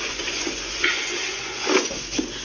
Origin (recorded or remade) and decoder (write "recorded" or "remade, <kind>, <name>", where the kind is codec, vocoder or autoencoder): remade, vocoder, Vocos